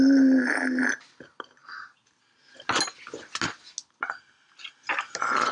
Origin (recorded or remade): recorded